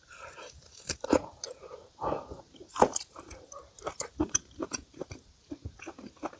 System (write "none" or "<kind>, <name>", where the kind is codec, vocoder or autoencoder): none